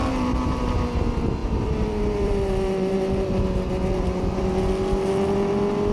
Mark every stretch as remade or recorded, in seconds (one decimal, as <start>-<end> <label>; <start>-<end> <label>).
0.0-0.6 remade; 0.6-1.4 recorded; 1.4-3.4 remade; 3.4-3.9 recorded; 3.9-4.4 remade; 4.4-5.9 recorded